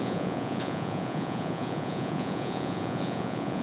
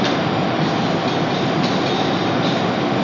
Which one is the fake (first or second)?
first